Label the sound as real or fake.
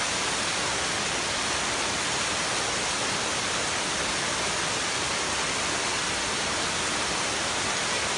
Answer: real